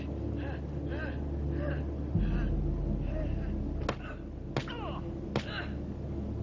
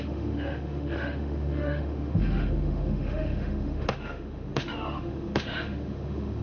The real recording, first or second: first